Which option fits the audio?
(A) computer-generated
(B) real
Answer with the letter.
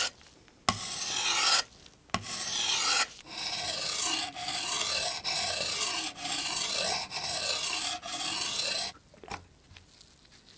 B